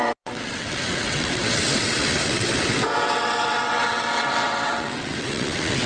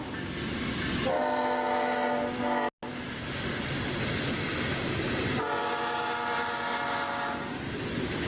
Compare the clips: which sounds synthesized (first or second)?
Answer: first